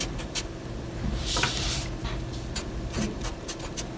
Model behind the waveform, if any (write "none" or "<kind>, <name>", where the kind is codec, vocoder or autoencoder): none